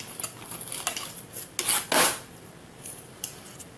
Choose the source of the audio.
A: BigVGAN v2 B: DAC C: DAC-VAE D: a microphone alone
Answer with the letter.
D